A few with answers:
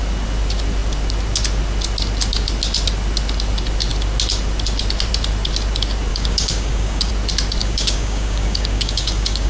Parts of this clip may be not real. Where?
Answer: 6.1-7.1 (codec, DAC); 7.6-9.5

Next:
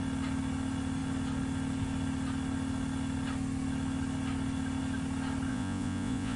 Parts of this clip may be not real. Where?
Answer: 5.5-6.4 (vocoder, Vocos)

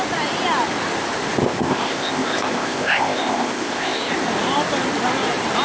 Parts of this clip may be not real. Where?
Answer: 1.4-4.1 (codec, ZipCodec)

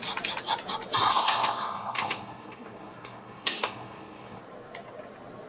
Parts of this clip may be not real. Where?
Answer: 1.1-4.4 (codec, SNAC)

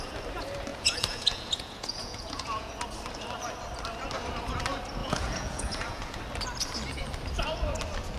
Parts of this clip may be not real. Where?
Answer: 0.7-2.7 (vocoder, Vocos); 5.0-6.2

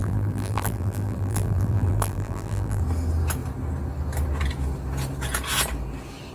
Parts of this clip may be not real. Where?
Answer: 0.0-2.8 (vocoder, BigVGAN v2)